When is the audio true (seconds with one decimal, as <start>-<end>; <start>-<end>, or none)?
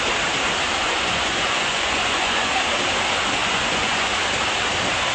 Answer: 0.0-0.8; 2.5-3.4; 4.1-5.1